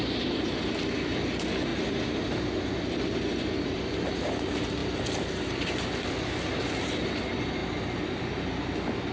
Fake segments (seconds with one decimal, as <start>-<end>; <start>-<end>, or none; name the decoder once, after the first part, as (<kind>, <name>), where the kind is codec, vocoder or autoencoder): none